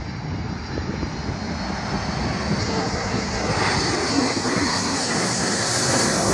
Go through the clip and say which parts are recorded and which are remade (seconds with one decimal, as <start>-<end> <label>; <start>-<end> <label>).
0.0-2.6 recorded; 2.6-3.5 remade; 3.5-4.1 recorded; 4.1-6.3 remade

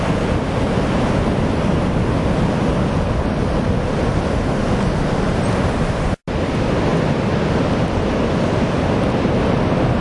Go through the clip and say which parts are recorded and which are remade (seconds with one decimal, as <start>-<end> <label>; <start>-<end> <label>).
0.0-10.0 recorded

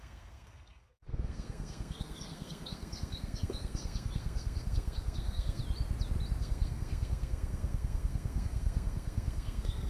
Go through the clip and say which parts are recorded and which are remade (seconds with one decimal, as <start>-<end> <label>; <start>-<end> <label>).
0.0-5.6 remade; 5.6-6.4 recorded; 6.4-9.9 remade